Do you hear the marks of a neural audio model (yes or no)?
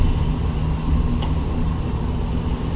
no